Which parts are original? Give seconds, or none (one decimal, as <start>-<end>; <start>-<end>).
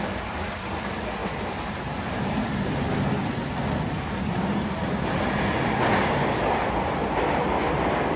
0.0-8.2